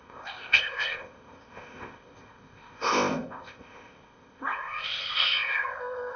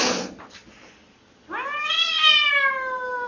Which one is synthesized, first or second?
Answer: first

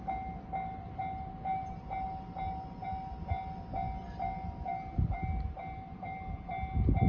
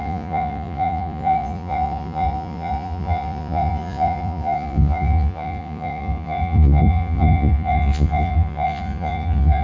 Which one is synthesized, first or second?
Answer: second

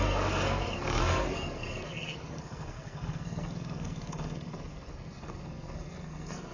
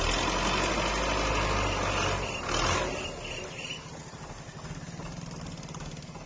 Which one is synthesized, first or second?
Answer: first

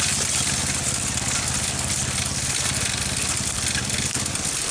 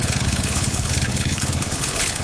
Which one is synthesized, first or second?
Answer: second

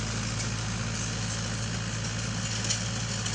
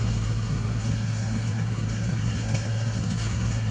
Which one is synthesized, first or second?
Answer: second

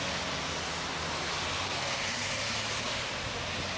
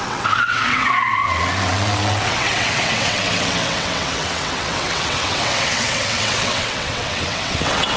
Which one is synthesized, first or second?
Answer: second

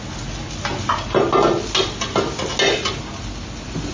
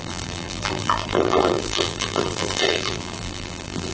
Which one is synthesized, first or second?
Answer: second